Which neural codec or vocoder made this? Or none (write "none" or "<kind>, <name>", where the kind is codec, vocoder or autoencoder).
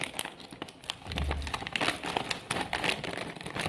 none